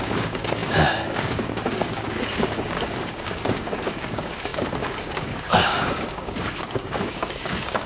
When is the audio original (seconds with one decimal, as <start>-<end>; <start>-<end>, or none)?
none